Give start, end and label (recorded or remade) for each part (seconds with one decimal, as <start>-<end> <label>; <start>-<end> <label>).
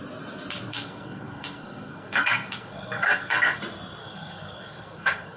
0.0-0.7 recorded; 0.7-3.6 remade; 3.6-4.0 recorded; 4.0-5.4 remade